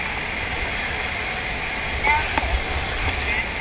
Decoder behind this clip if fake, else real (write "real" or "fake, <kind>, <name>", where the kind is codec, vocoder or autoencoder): real